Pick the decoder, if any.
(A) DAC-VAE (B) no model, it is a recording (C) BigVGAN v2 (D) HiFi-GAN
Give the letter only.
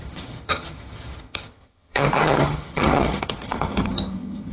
D